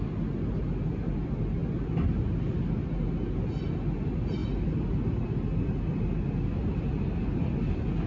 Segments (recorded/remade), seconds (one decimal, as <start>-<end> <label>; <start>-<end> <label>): 0.0-8.1 recorded